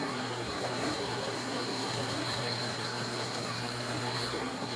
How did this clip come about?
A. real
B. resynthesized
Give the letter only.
B